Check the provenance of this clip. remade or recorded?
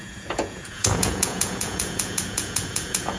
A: remade